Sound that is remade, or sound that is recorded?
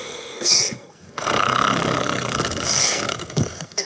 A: remade